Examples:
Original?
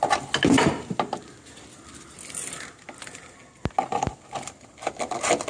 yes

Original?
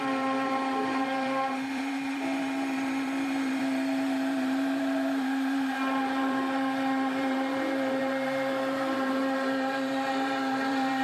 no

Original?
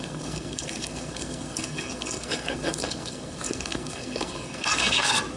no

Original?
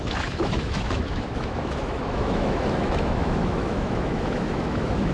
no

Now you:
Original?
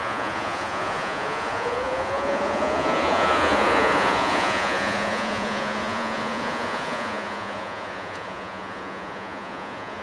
no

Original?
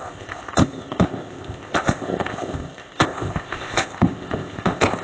no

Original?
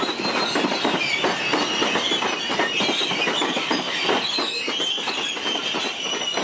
yes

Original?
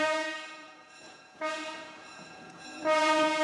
no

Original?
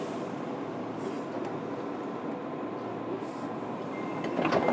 yes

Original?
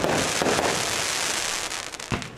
yes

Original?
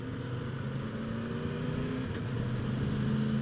yes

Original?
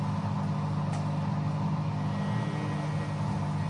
yes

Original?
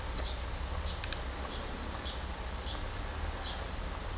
yes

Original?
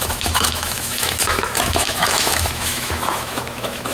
no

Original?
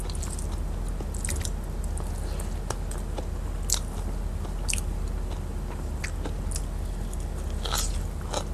yes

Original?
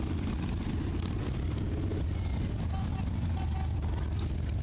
yes